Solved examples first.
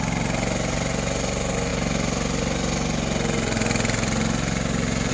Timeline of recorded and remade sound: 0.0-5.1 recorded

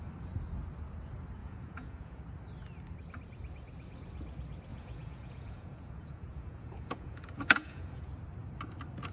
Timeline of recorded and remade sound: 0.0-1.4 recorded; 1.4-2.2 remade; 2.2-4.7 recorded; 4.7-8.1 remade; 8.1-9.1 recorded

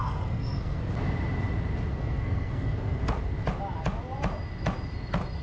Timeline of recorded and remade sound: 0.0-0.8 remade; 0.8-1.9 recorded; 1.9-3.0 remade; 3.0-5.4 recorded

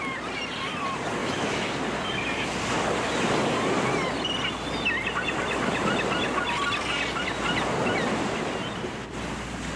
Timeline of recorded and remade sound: 0.0-1.2 recorded; 1.2-1.7 remade; 1.7-9.8 recorded